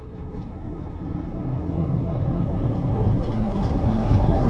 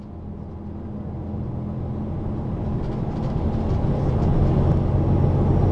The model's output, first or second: first